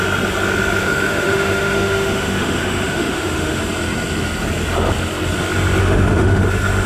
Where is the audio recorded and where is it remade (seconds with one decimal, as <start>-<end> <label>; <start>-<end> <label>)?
0.0-0.8 recorded; 0.8-3.6 remade; 3.6-5.8 recorded; 5.8-6.4 remade; 6.4-6.9 recorded